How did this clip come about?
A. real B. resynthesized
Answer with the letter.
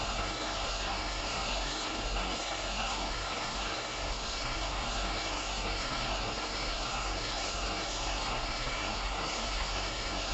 B